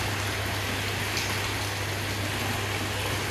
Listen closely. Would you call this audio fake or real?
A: real